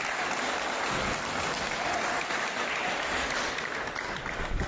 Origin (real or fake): real